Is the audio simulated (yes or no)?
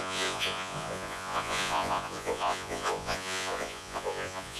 yes